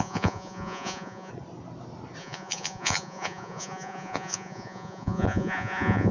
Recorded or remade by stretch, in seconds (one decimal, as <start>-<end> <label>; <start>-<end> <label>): 0.0-1.3 remade; 1.3-2.2 recorded; 2.2-6.1 remade